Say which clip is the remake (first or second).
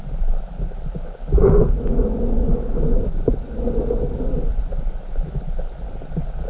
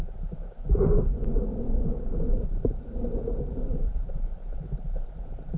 second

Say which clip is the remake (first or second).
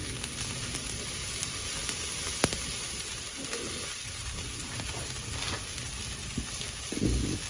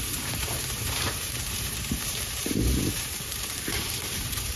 second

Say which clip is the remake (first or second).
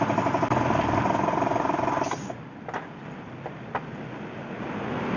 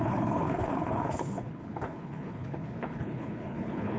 second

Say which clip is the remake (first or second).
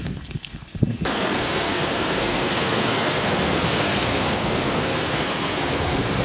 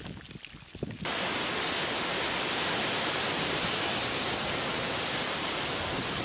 first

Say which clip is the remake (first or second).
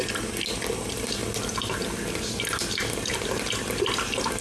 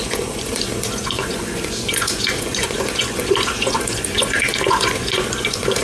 second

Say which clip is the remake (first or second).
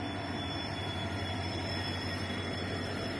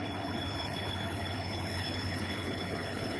second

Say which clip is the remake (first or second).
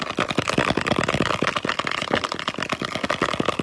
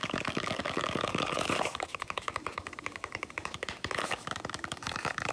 second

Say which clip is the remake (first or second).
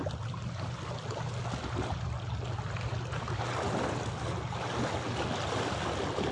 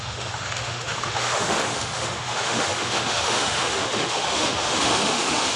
second